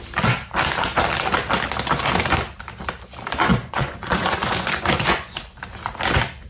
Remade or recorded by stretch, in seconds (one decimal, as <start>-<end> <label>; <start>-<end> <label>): 0.0-3.5 recorded; 3.5-5.6 remade; 5.6-6.5 recorded